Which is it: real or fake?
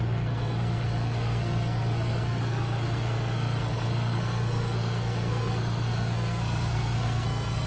fake